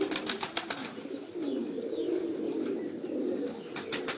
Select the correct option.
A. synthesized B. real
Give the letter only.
B